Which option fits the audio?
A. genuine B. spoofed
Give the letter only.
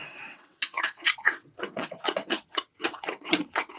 B